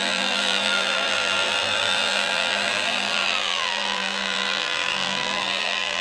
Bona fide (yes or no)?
no